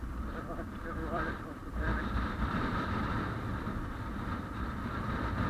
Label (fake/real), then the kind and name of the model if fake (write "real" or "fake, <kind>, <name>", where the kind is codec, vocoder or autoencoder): fake, vocoder, BigVGAN v2